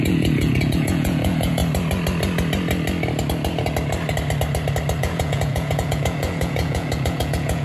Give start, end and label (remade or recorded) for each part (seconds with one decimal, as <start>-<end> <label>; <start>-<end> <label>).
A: 0.0-1.6 remade; 1.6-5.0 recorded; 5.0-7.6 remade